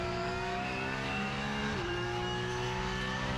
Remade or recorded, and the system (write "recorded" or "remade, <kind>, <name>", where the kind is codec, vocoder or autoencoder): remade, codec, DAC